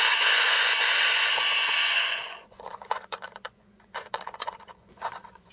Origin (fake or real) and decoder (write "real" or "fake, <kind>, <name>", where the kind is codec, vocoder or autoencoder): fake, vocoder, Vocos